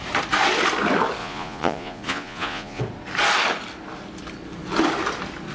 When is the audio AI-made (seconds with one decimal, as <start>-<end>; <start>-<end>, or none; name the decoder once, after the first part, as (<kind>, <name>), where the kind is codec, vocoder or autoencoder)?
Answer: 1.2-2.8 (vocoder, Vocos)